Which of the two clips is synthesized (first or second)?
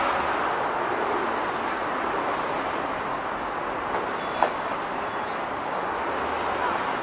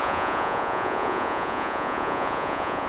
second